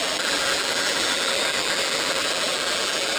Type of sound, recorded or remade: remade